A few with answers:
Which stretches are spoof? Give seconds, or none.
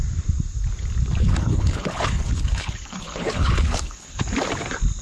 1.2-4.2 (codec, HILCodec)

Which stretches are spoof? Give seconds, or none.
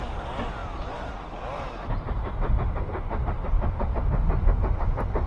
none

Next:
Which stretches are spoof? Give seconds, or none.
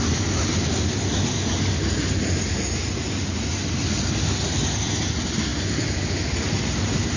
none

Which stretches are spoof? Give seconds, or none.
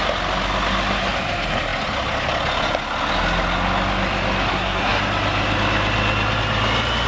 4.5-5.0 (codec, SNAC)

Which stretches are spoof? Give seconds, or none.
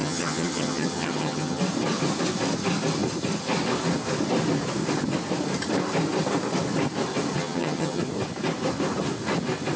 0.0-1.6 (vocoder, HiFi-GAN); 7.4-8.0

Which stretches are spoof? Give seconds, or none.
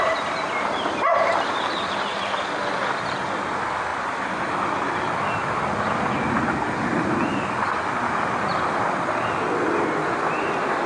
none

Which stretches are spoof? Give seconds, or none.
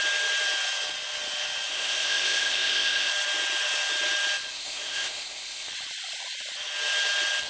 1.7-3.1 (codec, ZipCodec); 4.5-5.7